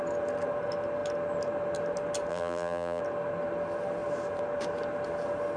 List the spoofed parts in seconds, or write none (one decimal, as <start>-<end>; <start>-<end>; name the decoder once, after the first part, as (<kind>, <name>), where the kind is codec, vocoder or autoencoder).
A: 2.3-3.0 (vocoder, BigVGAN v2)